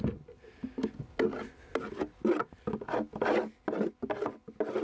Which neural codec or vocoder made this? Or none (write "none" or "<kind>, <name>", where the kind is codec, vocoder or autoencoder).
none